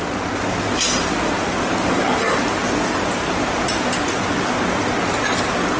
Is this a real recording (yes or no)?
yes